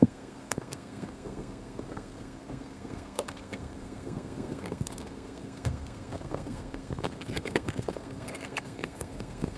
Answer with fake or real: fake